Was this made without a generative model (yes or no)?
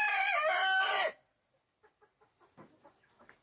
yes